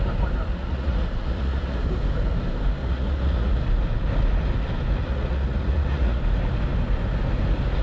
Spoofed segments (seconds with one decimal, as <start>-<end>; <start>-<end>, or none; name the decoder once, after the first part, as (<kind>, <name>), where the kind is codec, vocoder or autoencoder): 0.5-1.8 (vocoder, Vocos); 2.8-3.6; 5.0-6.2

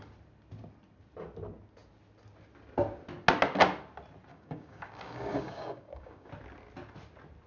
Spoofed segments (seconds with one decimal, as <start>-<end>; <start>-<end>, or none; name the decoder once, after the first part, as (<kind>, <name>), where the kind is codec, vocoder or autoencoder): 4.3-6.3 (codec, DAC)